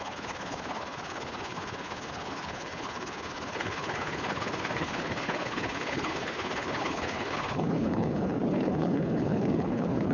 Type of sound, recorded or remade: remade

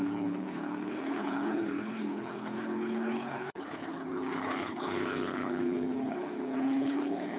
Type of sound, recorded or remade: remade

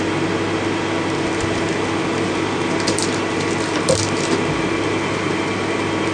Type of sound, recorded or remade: recorded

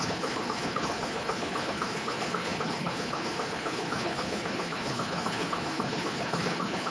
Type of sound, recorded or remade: remade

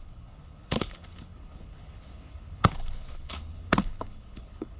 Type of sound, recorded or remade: remade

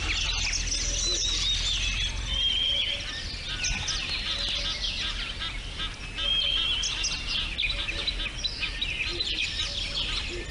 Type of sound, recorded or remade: recorded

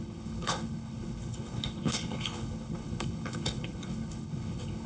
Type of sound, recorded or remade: remade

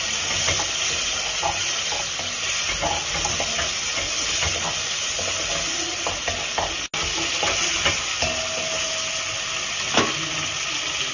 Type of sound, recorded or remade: recorded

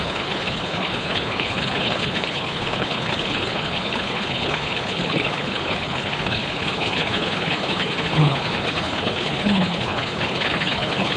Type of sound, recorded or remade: remade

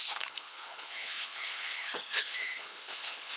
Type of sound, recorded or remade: remade